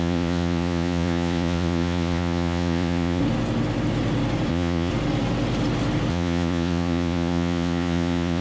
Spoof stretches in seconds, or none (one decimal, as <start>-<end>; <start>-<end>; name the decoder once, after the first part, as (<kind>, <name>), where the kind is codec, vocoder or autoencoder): 0.0-3.2 (vocoder, Vocos); 4.5-4.9; 6.1-8.4